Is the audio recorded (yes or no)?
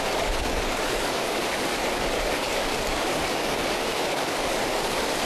no